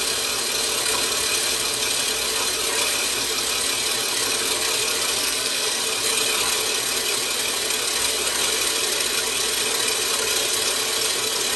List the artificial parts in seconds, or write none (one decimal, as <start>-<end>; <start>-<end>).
5.2-5.8